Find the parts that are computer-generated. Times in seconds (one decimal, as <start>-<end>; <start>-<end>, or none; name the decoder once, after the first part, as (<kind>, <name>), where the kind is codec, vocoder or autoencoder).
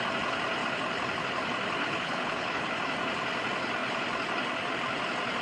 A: 1.8-2.7 (codec, HILCodec)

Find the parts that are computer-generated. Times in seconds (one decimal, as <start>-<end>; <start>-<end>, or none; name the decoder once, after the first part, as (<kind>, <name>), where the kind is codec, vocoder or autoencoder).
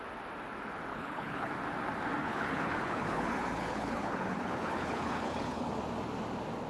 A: 0.9-1.5 (codec, HILCodec); 2.2-5.7